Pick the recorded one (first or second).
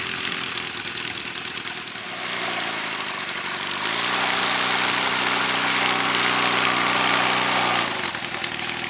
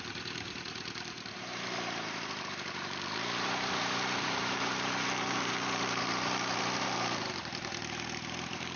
first